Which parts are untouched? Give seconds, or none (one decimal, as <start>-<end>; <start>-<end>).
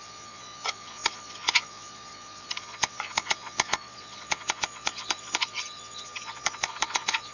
none